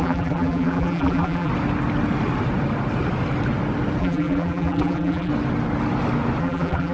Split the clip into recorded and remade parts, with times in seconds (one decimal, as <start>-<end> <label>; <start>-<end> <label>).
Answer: 0.0-1.5 remade; 1.5-4.0 recorded; 4.0-5.3 remade; 5.3-6.4 recorded; 6.4-6.9 remade